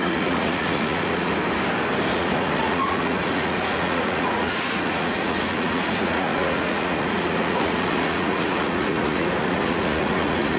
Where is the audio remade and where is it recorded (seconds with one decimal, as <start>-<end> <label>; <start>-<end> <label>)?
0.0-1.3 remade; 1.3-2.1 recorded; 2.1-10.6 remade

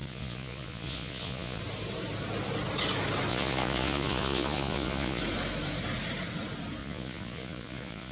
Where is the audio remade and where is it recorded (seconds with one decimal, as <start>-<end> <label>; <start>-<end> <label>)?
0.0-1.6 remade; 1.6-3.3 recorded; 3.3-5.2 remade; 5.2-6.8 recorded; 6.8-8.1 remade

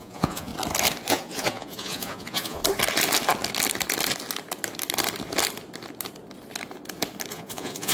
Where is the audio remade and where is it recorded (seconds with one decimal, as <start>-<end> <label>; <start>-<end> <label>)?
0.0-0.5 remade; 0.5-1.1 recorded; 1.1-2.6 remade; 2.6-7.3 recorded; 7.3-7.9 remade

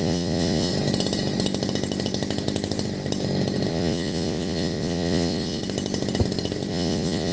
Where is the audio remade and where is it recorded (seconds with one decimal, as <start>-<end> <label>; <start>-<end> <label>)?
0.0-0.7 remade; 0.7-3.7 recorded; 3.7-5.6 remade; 5.6-6.7 recorded; 6.7-7.3 remade